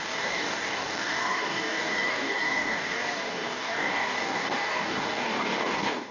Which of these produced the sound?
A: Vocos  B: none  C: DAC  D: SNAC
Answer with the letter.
C